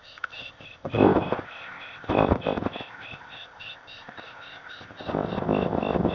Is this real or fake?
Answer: fake